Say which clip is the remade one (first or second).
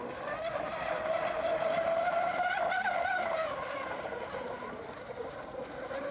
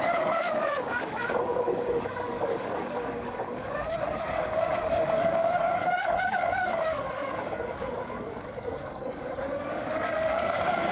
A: second